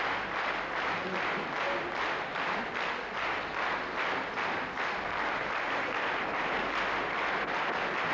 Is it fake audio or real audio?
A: real